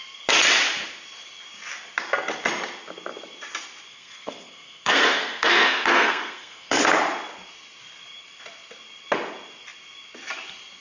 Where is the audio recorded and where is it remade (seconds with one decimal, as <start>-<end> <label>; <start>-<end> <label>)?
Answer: 0.0-3.9 recorded; 3.9-6.8 remade; 6.8-10.8 recorded